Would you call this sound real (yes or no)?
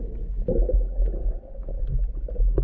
yes